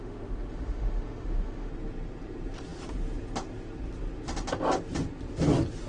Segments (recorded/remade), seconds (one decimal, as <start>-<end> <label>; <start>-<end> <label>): 0.0-1.7 remade; 1.7-5.9 recorded